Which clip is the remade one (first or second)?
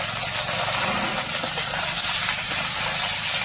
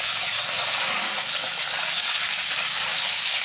second